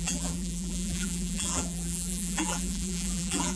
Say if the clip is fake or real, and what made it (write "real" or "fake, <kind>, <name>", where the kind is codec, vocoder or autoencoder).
fake, vocoder, BigVGAN v2